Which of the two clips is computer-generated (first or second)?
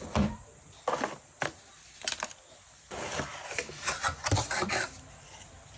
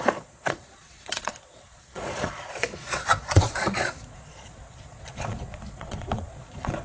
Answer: second